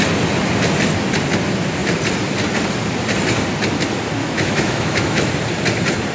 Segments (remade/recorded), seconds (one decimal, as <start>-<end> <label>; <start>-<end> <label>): 0.0-4.2 recorded; 4.2-5.3 remade; 5.3-6.1 recorded